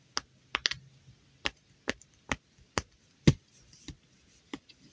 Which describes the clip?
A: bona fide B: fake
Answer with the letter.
A